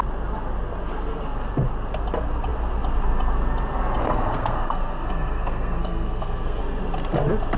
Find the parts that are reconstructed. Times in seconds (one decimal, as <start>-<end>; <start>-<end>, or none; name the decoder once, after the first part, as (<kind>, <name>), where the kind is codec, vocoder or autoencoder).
4.0-6.6 (codec, SNAC)